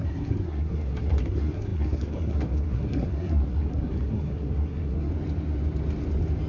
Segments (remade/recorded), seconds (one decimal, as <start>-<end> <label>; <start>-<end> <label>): 0.0-5.1 remade; 5.1-6.5 recorded